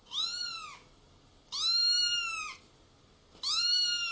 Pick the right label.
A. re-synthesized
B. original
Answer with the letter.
B